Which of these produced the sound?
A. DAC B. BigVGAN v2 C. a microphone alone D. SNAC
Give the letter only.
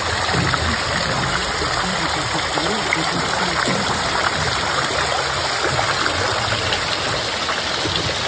C